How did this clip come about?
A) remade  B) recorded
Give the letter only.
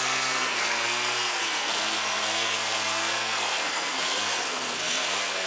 A